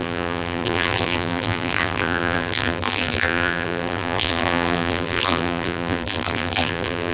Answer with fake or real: fake